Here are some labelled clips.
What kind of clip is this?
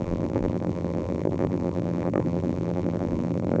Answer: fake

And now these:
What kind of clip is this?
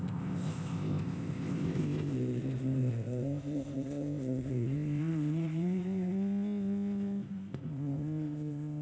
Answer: fake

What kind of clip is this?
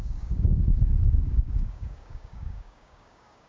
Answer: fake